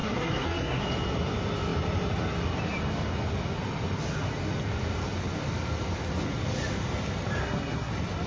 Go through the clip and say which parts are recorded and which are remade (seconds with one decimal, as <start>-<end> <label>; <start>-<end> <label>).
0.0-0.8 remade; 0.8-7.4 recorded; 7.4-7.9 remade; 7.9-8.3 recorded